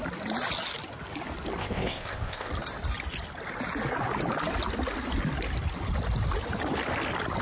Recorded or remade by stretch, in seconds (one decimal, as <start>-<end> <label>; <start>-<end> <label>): 0.0-1.6 recorded; 1.6-2.5 remade; 2.5-7.4 recorded